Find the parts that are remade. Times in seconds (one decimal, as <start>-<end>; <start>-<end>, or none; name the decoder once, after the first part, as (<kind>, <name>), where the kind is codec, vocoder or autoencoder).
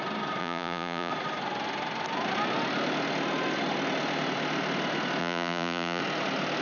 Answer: 0.4-1.1 (vocoder, Vocos); 5.2-6.0